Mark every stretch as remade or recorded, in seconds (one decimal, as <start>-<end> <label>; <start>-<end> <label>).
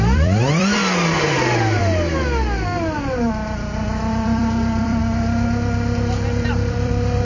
0.0-0.8 remade; 0.8-1.3 recorded; 1.3-1.8 remade; 1.8-4.1 recorded; 4.1-5.0 remade; 5.0-6.5 recorded; 6.5-7.2 remade